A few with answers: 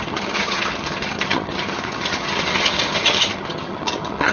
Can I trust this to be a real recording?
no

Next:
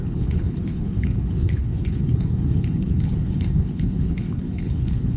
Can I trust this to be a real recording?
no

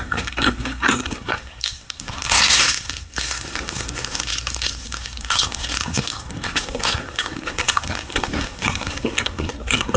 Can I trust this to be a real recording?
no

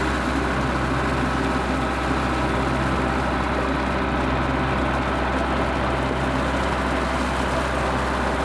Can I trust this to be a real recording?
yes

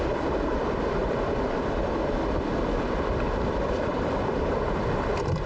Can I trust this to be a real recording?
no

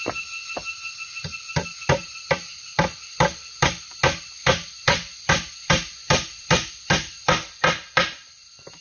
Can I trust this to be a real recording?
no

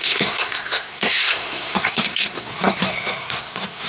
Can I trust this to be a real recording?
no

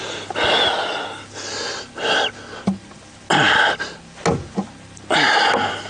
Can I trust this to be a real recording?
yes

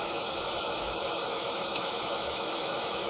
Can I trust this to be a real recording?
no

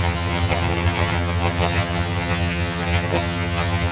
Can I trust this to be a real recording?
no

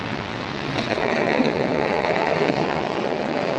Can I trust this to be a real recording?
no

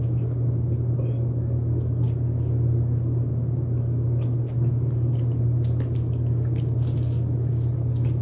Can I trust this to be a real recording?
yes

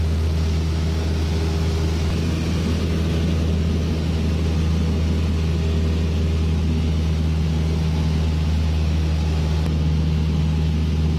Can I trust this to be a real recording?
yes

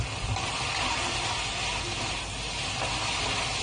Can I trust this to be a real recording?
yes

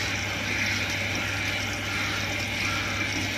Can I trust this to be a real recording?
yes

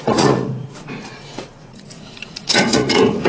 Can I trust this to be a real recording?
no